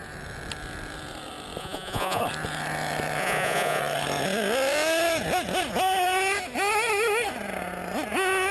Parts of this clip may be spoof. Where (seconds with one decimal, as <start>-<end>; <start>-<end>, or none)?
1.6-2.2; 3.2-3.8